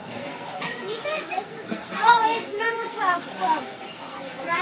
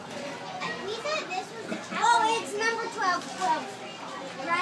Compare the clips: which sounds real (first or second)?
second